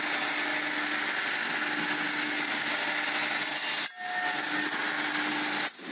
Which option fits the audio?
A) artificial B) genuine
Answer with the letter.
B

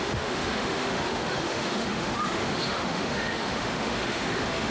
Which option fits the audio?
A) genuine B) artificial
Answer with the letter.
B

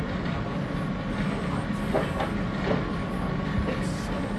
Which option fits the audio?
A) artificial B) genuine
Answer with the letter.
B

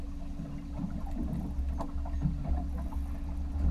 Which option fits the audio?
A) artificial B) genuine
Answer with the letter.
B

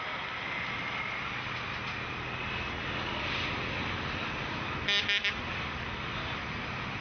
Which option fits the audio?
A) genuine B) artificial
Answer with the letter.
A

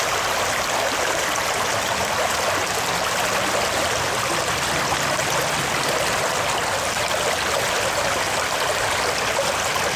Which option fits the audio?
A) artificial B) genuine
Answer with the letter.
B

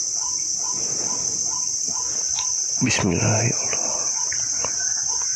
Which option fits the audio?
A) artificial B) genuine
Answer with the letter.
B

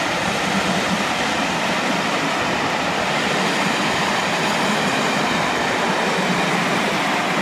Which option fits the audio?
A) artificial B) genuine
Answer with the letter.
B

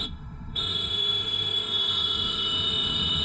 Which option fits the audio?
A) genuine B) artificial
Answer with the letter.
B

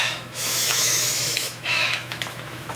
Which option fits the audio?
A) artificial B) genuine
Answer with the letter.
A